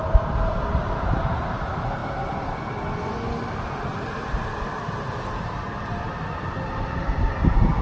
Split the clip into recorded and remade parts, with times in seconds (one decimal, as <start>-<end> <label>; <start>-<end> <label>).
0.0-2.0 remade; 2.0-3.4 recorded; 3.4-7.8 remade